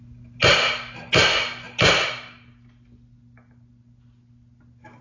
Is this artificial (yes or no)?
no